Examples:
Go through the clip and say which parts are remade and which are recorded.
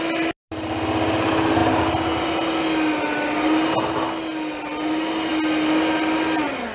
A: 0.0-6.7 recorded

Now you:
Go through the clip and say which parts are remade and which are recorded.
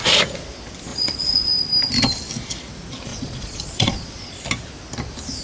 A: 0.0-0.9 recorded; 0.9-1.5 remade; 1.5-3.1 recorded; 3.1-4.3 remade; 4.3-5.4 recorded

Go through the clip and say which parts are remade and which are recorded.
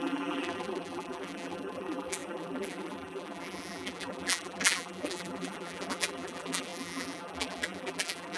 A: 0.0-8.4 remade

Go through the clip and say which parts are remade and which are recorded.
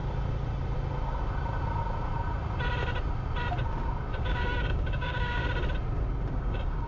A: 0.0-4.1 recorded; 4.1-5.4 remade; 5.4-6.3 recorded; 6.3-6.9 remade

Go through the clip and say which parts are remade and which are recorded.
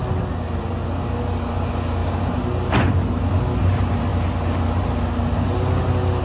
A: 0.0-6.2 recorded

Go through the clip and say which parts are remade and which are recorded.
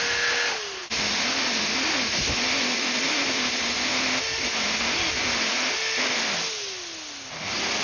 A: 0.0-7.8 recorded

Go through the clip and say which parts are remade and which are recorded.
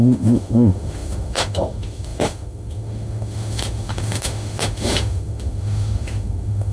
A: 0.0-6.7 remade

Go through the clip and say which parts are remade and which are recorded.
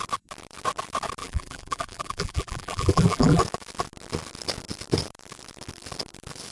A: 0.0-1.2 recorded; 1.2-3.4 remade; 3.4-6.5 recorded